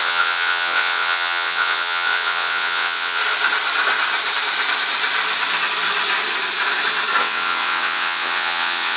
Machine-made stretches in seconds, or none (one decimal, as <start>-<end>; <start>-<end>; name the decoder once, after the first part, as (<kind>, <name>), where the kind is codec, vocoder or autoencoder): 0.0-3.2 (vocoder, WaveNeXt); 7.2-9.0